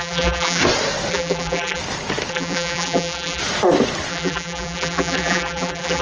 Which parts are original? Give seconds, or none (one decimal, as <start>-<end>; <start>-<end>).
0.6-1.1; 1.8-2.3; 3.4-4.1